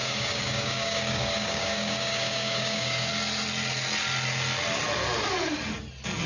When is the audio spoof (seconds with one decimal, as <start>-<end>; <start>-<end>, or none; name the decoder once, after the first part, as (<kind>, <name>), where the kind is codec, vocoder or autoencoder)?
0.0-3.1 (codec, DAC)